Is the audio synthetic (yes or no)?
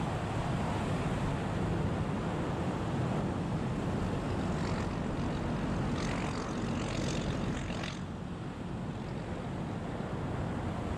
no